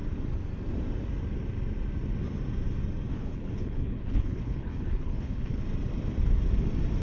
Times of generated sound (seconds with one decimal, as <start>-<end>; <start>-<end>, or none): 3.1-5.6